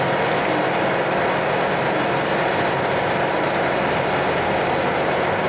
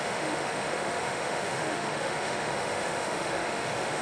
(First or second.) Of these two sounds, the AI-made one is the second